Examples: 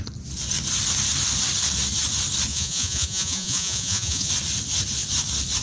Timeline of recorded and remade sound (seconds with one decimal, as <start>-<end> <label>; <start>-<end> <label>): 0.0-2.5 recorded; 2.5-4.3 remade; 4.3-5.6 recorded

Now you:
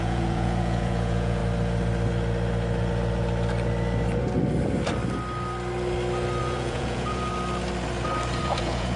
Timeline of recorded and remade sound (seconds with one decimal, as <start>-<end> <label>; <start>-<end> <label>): 0.0-1.4 remade; 1.4-6.4 recorded; 6.4-7.3 remade; 7.3-8.4 recorded; 8.4-9.0 remade

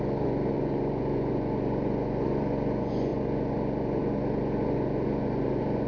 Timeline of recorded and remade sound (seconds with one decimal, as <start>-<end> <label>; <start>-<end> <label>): 0.0-5.9 remade

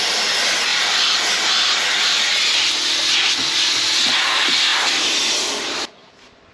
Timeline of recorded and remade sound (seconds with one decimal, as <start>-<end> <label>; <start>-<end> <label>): 0.0-6.5 recorded